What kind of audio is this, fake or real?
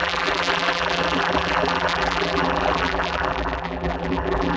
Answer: fake